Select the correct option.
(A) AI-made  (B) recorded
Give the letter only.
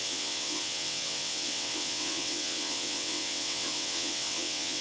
A